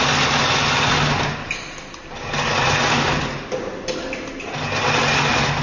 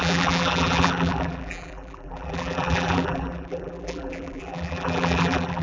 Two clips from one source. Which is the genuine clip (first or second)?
first